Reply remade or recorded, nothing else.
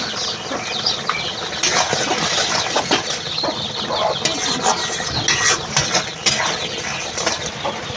recorded